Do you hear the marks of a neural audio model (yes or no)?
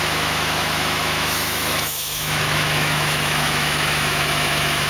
yes